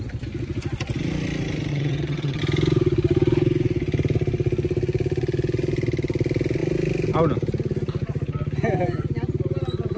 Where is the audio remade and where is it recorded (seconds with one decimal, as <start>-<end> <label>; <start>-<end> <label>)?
0.0-1.7 recorded; 1.7-2.4 remade; 2.4-10.0 recorded